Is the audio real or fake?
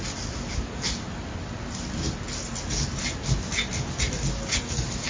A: real